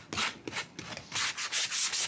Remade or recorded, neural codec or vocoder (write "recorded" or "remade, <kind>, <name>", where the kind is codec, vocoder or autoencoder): recorded